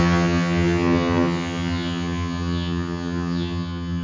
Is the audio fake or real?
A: fake